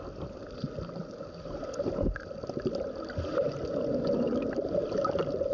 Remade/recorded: recorded